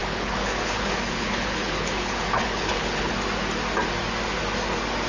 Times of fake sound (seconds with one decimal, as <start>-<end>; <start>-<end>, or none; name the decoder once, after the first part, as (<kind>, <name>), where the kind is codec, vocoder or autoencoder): 0.0-3.1 (codec, HILCodec)